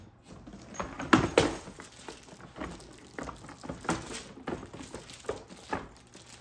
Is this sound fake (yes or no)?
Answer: no